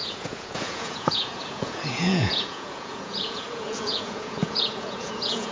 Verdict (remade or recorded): remade